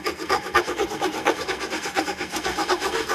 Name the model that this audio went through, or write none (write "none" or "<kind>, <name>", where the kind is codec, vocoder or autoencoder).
codec, SNAC